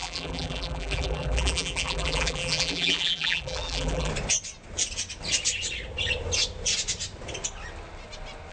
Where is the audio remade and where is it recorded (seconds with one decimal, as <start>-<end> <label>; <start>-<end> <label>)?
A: 0.0-4.1 remade; 4.1-8.5 recorded

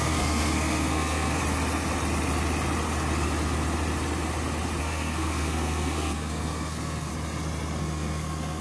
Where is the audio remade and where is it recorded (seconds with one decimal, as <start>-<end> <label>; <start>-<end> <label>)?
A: 0.0-1.4 remade; 1.4-4.8 recorded; 4.8-7.1 remade; 7.1-7.8 recorded; 7.8-8.6 remade